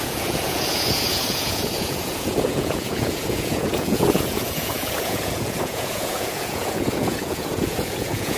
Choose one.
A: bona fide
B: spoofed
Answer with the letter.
B